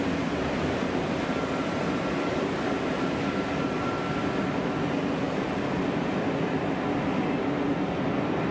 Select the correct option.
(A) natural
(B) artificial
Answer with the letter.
A